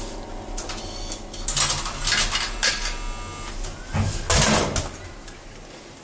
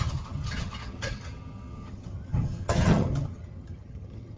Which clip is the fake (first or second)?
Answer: second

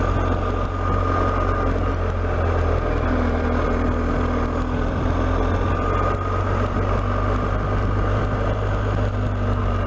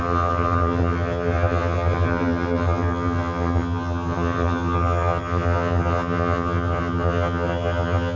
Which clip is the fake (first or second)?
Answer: second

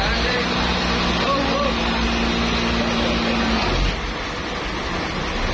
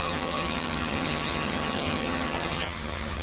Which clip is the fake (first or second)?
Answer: second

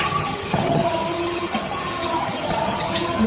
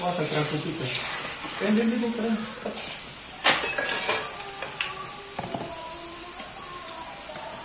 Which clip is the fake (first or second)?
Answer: first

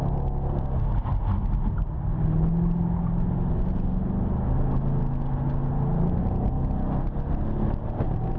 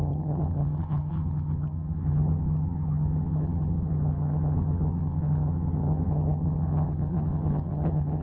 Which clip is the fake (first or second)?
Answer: second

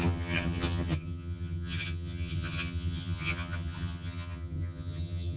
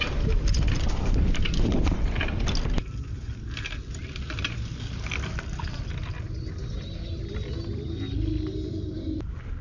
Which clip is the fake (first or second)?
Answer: first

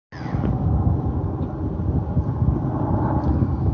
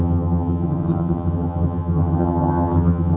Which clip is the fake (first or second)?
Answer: second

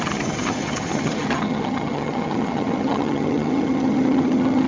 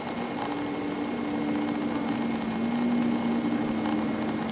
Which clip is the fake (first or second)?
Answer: first